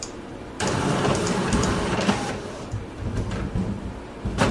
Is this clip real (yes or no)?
no